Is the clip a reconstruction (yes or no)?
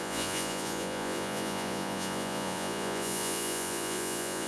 yes